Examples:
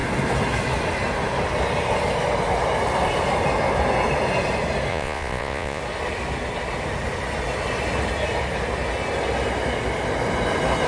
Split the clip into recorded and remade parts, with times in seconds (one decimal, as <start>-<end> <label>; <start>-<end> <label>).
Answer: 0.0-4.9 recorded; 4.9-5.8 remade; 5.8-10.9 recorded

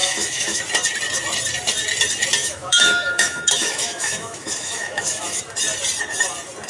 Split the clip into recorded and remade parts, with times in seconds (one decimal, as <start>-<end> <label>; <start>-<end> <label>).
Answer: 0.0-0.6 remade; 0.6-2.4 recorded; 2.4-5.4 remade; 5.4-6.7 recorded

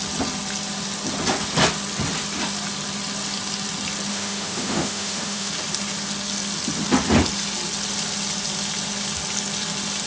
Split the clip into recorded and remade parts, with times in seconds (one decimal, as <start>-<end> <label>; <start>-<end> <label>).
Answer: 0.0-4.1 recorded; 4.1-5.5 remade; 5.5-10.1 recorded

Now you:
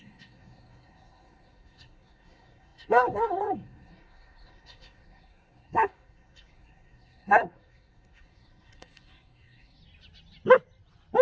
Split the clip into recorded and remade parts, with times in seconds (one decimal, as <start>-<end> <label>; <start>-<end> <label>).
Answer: 0.0-9.8 remade; 9.8-11.2 recorded

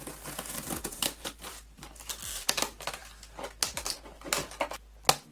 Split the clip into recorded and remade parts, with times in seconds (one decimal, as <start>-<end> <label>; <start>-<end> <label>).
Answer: 0.0-0.9 recorded; 0.9-2.1 remade; 2.1-5.3 recorded

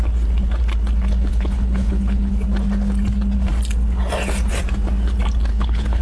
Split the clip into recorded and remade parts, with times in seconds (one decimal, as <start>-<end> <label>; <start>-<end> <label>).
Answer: 0.0-1.3 recorded; 1.3-2.3 remade; 2.3-5.5 recorded; 5.5-6.0 remade

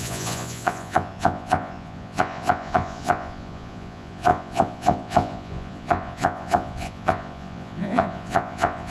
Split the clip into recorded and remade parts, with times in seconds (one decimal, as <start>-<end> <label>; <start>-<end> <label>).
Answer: 0.0-8.9 remade

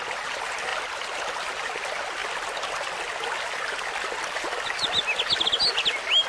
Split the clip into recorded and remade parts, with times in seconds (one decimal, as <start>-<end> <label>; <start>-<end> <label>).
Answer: 0.0-6.3 recorded